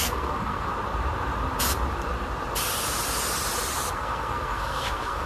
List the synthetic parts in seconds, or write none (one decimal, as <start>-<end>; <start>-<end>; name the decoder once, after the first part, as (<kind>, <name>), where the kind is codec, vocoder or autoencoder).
0.0-0.7 (codec, SNAC); 3.9-5.3